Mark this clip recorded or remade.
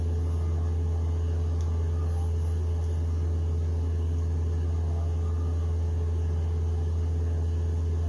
recorded